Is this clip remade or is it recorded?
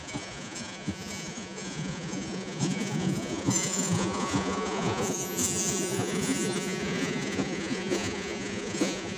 remade